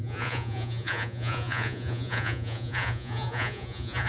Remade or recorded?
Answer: remade